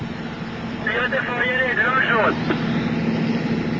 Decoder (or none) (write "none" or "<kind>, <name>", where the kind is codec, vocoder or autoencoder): none